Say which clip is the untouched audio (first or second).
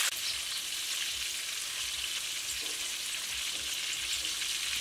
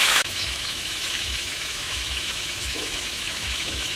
first